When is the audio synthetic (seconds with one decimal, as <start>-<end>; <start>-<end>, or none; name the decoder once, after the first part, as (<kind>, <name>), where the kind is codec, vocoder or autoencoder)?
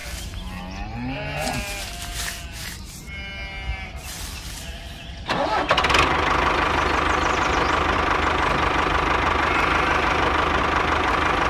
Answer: none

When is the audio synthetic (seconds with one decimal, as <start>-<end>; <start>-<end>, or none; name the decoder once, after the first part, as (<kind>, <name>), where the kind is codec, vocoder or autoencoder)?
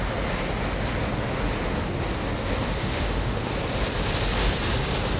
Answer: 2.8-3.5 (autoencoder, DAC-VAE)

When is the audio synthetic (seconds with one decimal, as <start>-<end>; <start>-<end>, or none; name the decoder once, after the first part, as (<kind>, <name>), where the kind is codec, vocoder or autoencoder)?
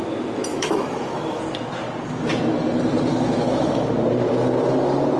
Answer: 0.5-1.4 (autoencoder, DAC-VAE); 3.1-3.9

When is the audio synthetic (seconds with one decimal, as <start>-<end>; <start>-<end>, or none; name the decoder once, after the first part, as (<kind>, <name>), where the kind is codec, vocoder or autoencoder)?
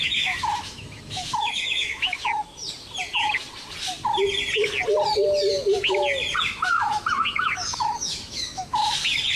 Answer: 0.0-2.2 (autoencoder, DAC-VAE); 6.4-8.8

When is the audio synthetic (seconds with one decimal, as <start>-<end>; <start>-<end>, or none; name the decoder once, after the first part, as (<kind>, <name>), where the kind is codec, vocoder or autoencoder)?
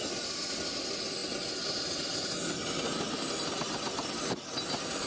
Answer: none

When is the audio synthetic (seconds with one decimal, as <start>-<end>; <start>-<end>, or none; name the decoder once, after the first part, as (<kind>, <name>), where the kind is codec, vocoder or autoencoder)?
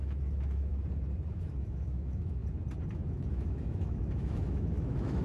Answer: 0.0-0.7 (autoencoder, DAC-VAE); 1.3-2.4; 2.9-5.2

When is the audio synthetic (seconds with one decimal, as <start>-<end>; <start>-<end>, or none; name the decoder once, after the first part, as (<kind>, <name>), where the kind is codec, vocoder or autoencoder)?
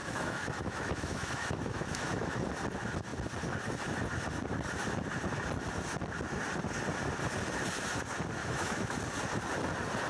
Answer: 0.0-2.3 (autoencoder, DAC-VAE); 8.4-9.0